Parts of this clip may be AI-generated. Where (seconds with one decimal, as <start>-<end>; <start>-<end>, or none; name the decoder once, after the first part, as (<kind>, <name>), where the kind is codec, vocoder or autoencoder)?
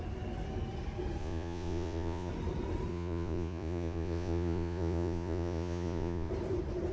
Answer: 1.2-2.3 (vocoder, Vocos); 2.9-6.3